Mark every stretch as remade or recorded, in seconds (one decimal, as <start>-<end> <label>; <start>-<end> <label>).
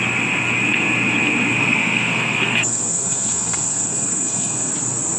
0.0-1.6 recorded; 1.6-4.7 remade; 4.7-5.2 recorded